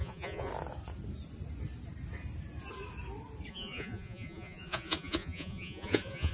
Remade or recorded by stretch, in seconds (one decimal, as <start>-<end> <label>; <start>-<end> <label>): 0.0-0.5 remade; 0.5-3.5 recorded; 3.5-6.3 remade